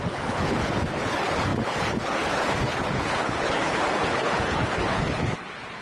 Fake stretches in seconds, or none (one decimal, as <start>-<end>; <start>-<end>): 0.0-5.8